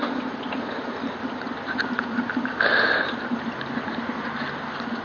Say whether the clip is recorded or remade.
recorded